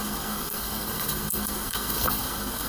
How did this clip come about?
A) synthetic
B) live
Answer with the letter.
A